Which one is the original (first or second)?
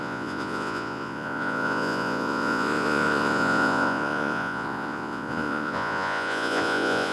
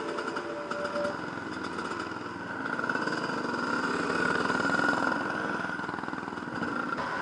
second